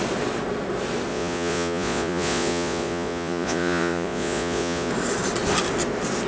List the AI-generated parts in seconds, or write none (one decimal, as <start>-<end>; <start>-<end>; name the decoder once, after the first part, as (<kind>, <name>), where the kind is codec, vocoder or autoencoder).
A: 1.1-4.9 (vocoder, Vocos)